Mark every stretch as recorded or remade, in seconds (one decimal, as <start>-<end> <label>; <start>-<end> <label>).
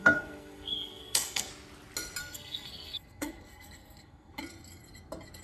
0.0-1.5 remade; 1.5-2.2 recorded; 2.2-4.4 remade; 4.4-5.4 recorded